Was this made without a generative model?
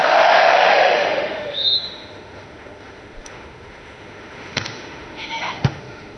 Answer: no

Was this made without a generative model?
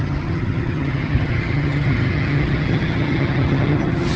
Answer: no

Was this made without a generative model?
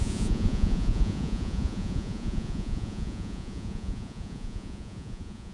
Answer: no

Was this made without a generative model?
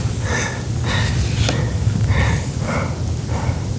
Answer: yes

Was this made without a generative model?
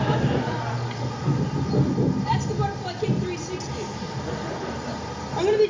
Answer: yes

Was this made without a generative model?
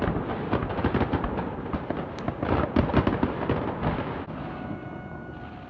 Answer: yes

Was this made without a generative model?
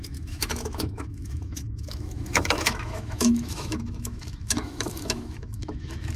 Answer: no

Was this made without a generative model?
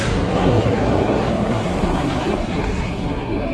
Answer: no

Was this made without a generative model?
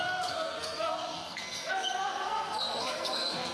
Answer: no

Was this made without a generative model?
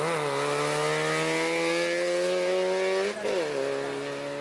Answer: yes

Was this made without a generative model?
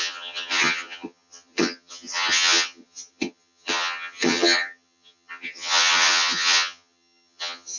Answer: no